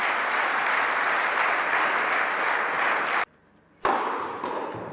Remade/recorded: recorded